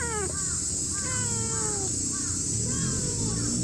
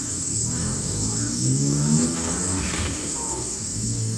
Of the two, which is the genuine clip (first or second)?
first